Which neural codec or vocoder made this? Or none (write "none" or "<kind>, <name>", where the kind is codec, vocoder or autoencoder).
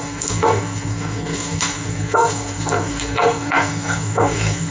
codec, SNAC